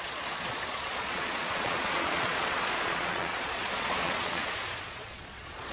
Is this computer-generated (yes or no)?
yes